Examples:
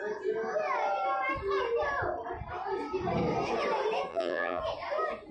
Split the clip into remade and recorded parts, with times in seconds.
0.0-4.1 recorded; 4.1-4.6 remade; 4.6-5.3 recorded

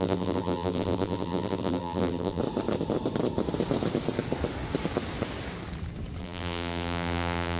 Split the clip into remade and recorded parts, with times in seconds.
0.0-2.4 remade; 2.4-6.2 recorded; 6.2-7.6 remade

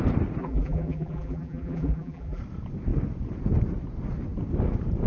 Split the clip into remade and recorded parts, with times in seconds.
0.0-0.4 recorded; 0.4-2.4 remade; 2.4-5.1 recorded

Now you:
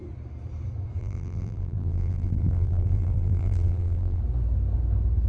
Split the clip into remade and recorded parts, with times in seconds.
0.0-1.0 recorded; 1.0-4.2 remade; 4.2-5.3 recorded